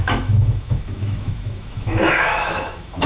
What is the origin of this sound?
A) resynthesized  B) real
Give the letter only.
A